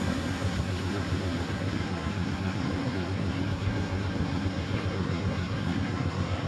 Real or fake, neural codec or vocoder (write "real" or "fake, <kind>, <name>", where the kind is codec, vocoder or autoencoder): fake, codec, SNAC